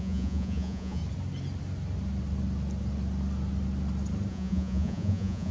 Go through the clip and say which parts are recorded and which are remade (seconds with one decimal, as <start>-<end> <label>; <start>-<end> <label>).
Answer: 0.0-1.0 remade; 1.0-4.3 recorded; 4.3-5.5 remade